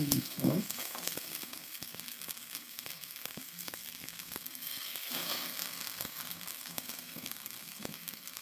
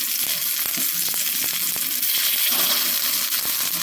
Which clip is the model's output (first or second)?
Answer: first